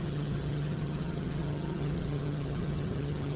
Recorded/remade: remade